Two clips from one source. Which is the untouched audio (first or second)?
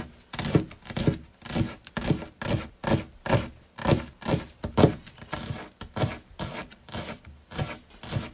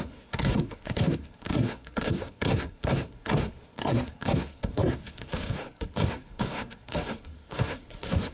first